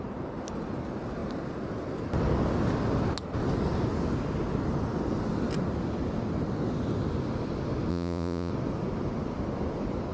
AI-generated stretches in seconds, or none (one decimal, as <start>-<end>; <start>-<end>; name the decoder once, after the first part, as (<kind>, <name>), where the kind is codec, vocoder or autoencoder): 7.9-8.5 (vocoder, Vocos)